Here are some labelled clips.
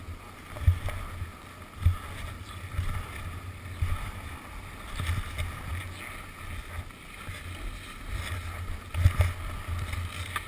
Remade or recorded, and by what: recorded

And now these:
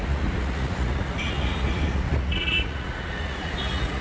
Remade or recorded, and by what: remade, vocoder, Vocos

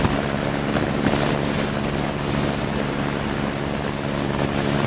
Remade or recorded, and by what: recorded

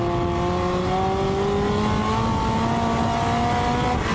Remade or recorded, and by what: recorded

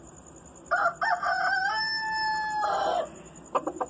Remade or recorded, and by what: recorded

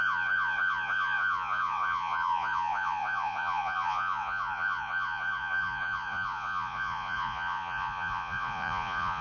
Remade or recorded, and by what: remade, vocoder, Vocos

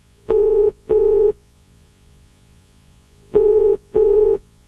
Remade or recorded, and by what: remade, vocoder, Vocos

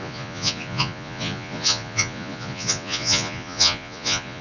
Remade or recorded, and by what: remade, vocoder, Vocos